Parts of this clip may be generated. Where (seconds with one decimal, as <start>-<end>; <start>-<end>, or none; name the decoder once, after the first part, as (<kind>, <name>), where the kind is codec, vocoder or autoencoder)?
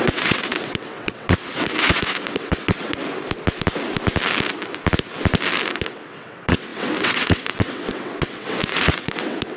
0.0-3.0 (vocoder, WaveNeXt); 5.7-9.6